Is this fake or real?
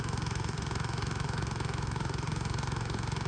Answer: fake